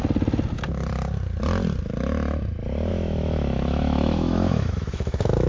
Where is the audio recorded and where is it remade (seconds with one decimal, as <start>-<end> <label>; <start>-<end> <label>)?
0.0-2.9 recorded; 2.9-5.5 remade